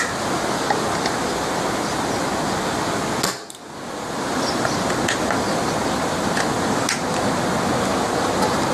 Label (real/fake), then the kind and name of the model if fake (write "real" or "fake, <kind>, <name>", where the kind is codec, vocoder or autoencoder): real